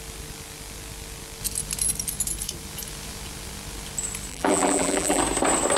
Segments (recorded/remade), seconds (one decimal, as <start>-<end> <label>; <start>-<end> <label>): 0.0-4.3 recorded; 4.3-5.2 remade; 5.2-5.8 recorded